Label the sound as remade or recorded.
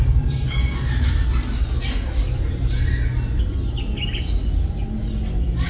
recorded